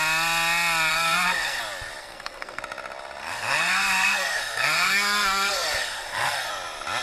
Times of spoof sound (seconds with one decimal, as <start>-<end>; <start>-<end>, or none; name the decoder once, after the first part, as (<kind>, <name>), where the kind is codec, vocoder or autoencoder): 0.9-1.6 (codec, SNAC); 2.0-2.6; 3.2-6.5